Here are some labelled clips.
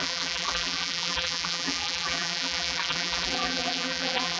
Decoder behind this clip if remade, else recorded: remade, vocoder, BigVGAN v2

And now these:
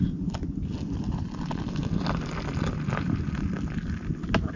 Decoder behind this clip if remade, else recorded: recorded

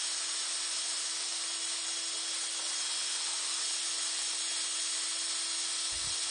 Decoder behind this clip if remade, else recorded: recorded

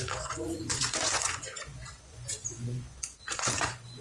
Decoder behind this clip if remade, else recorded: remade, vocoder, Vocos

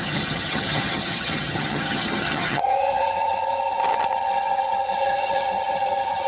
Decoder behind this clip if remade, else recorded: remade, vocoder, HiFi-GAN